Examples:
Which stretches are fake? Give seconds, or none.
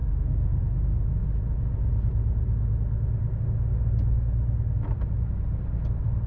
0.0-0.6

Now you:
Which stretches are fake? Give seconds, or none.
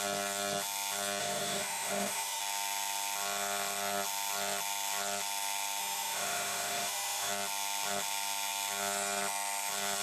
1.2-2.4; 5.8-7.3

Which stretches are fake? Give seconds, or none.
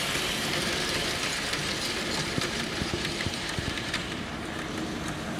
0.0-1.6; 2.4-5.4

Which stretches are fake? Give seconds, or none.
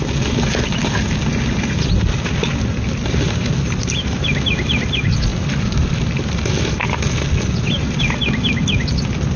none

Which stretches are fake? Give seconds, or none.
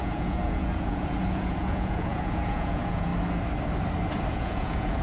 0.0-3.1; 4.3-5.0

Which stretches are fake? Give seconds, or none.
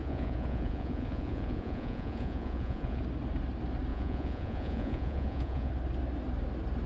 0.0-3.0; 3.9-5.7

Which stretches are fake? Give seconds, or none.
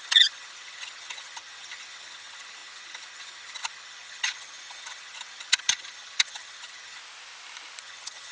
0.0-7.0; 7.8-8.3